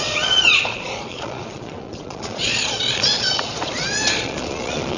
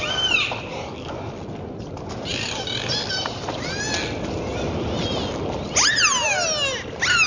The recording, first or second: second